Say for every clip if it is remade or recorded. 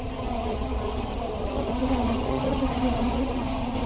remade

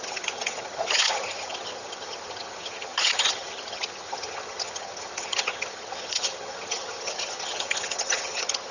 remade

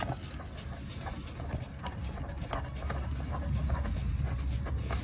recorded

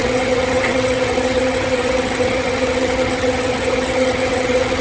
remade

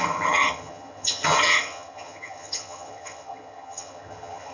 remade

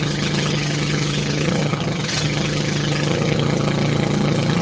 remade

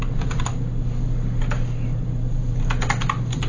recorded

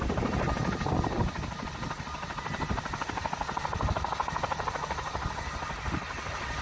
recorded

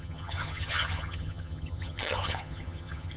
remade